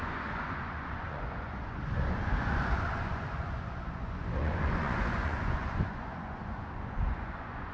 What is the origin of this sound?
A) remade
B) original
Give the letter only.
A